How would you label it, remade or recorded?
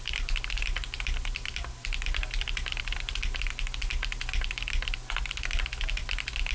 recorded